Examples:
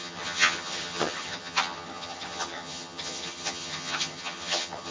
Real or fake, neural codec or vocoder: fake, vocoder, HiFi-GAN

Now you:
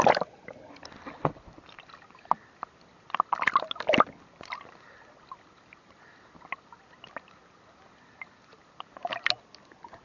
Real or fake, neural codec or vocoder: real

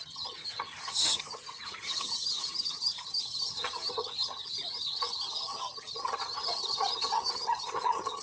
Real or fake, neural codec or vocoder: fake, vocoder, HiFi-GAN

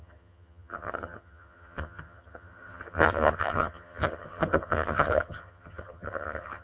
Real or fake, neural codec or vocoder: fake, vocoder, HiFi-GAN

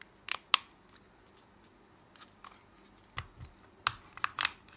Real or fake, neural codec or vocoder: real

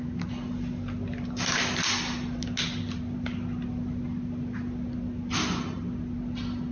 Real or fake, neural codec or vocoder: real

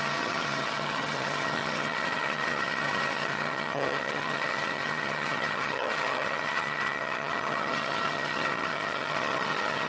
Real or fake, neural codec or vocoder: fake, vocoder, HiFi-GAN